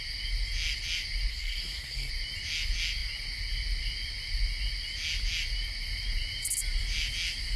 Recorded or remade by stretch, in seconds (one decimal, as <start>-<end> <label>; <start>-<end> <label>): 0.0-1.3 recorded; 1.3-2.1 remade; 2.1-7.6 recorded